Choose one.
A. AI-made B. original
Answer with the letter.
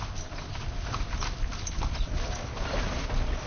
B